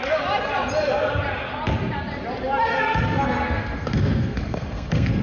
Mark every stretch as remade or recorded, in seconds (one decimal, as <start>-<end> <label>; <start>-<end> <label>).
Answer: 0.0-2.7 recorded; 2.7-5.2 remade